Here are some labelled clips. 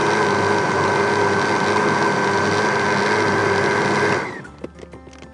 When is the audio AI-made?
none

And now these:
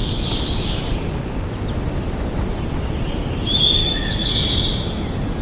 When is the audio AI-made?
3.8-4.3 (autoencoder, DAC-VAE)

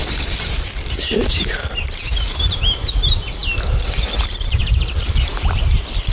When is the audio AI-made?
0.0-2.8 (vocoder, BigVGAN v2); 4.6-5.6